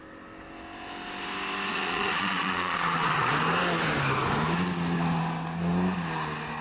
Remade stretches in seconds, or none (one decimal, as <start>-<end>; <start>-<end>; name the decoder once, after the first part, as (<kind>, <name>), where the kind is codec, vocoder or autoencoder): 1.7-3.3 (vocoder, Vocos)